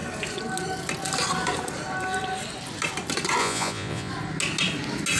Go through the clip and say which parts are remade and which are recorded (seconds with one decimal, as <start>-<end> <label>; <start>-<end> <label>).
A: 0.0-3.4 recorded; 3.4-4.1 remade; 4.1-5.2 recorded